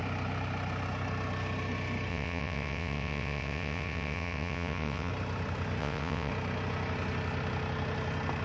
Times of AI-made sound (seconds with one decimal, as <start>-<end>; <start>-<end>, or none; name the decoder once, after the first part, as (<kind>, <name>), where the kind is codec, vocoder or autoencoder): 2.1-5.1 (vocoder, WaveNeXt); 5.8-6.3